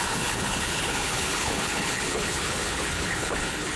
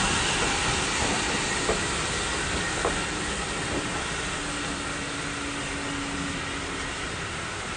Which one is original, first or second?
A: second